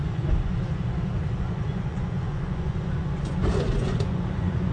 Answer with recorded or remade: remade